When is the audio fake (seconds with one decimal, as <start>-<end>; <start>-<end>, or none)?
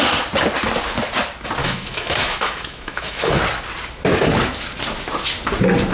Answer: 1.6-3.4